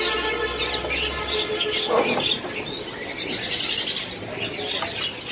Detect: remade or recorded recorded